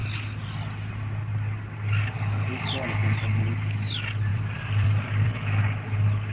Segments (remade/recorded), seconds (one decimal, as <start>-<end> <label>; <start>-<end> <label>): 0.0-4.3 recorded; 4.3-5.3 remade; 5.3-6.3 recorded